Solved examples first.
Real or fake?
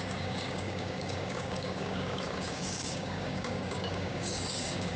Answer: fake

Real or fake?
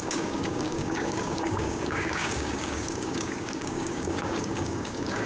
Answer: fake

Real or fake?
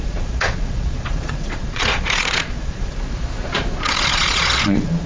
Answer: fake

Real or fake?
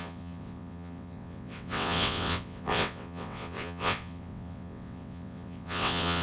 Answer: fake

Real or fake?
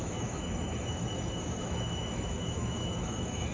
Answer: fake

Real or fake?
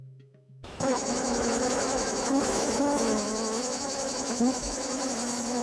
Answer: fake